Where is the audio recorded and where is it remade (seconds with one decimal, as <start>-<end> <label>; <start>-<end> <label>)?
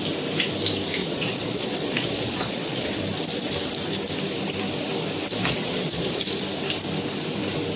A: 0.0-1.0 recorded; 1.0-3.0 remade; 3.0-5.3 recorded; 5.3-6.2 remade; 6.2-7.8 recorded